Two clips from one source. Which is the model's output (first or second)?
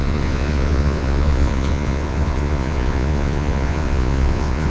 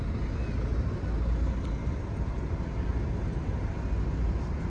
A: first